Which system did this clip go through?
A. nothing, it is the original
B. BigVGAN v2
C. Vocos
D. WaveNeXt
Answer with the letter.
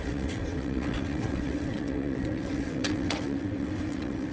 D